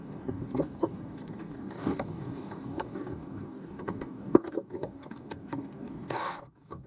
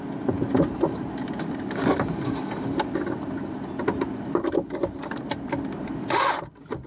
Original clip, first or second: second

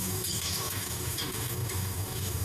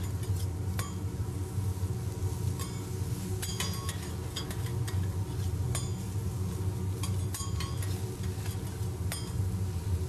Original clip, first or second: second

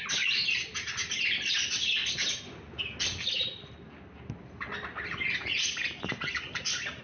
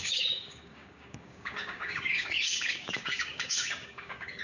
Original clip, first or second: first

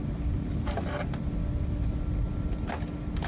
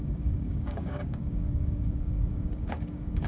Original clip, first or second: first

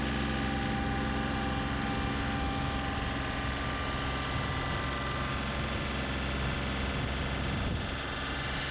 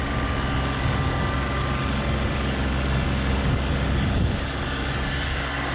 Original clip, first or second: first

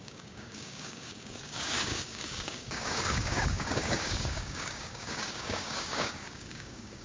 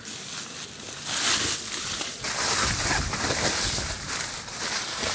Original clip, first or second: second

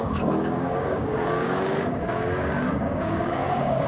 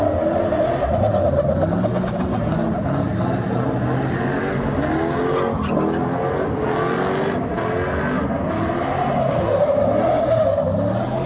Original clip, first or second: second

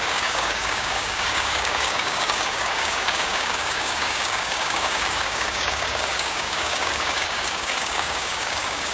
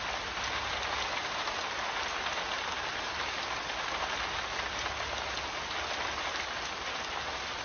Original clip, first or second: second